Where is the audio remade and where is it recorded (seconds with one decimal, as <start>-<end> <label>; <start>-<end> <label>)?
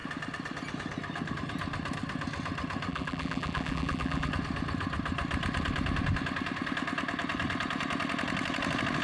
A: 0.0-2.9 recorded; 2.9-4.3 remade; 4.3-9.0 recorded